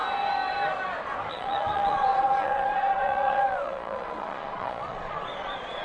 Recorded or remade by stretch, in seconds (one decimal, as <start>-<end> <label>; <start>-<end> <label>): 0.0-1.3 recorded; 1.3-5.8 remade